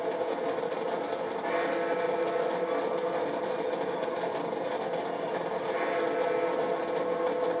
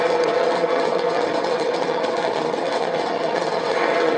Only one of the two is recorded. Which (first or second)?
first